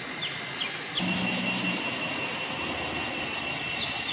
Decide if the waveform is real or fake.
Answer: real